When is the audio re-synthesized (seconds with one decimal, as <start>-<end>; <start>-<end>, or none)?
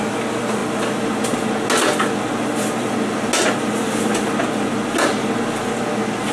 none